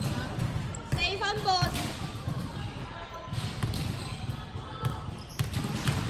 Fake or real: real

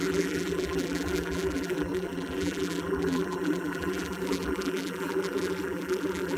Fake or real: fake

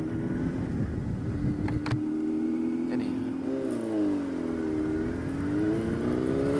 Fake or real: real